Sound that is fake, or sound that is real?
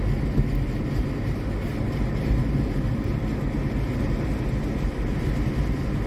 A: real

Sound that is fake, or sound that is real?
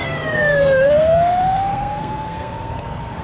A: fake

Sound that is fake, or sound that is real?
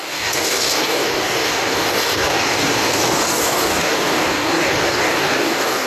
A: fake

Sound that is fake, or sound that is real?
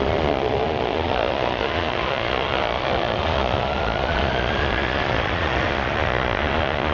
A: fake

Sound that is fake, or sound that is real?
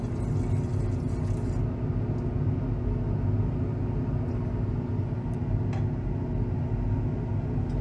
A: real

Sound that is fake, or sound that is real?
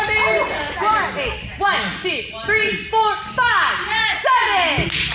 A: real